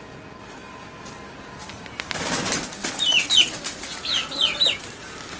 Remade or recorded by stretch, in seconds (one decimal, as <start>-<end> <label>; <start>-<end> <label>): 0.0-5.4 recorded